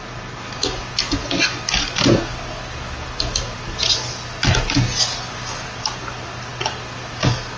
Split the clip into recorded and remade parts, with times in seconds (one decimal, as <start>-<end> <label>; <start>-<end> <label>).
0.0-7.6 recorded